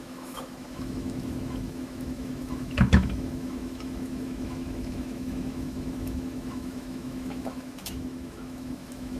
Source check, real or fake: fake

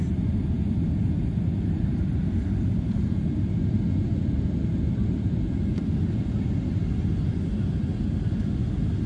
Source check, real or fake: real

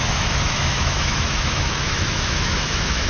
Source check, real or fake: fake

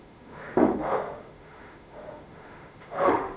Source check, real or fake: fake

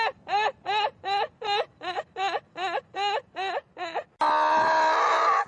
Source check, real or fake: real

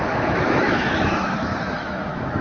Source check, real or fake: fake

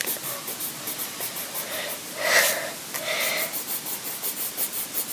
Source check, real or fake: real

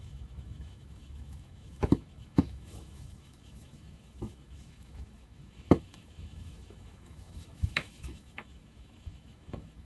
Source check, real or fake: fake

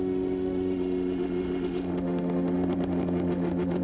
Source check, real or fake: fake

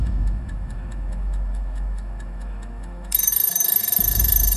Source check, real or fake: fake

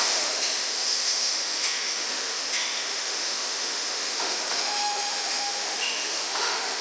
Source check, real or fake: fake